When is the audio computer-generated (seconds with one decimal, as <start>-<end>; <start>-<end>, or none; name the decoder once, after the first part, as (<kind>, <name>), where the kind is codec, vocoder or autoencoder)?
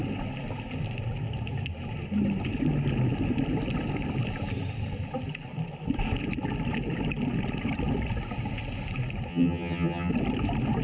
9.3-10.1 (vocoder, HiFi-GAN)